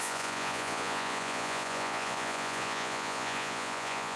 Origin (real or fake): fake